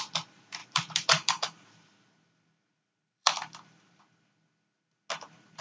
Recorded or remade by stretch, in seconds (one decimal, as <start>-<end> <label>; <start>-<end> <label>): 0.0-0.6 recorded; 0.6-4.0 remade; 4.0-5.6 recorded